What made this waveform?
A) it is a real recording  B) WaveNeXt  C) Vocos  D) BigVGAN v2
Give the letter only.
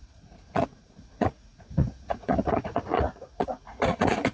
C